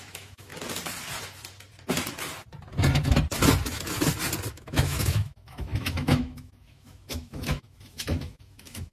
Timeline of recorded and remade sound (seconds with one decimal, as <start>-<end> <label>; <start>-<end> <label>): 0.0-0.5 remade; 0.5-4.5 recorded; 4.5-8.9 remade